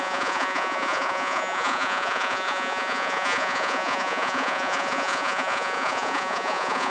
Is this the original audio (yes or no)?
no